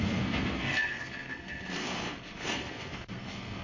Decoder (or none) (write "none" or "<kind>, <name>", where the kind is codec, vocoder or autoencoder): codec, SNAC